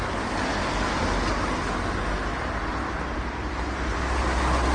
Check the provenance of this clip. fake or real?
real